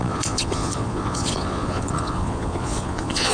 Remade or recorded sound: remade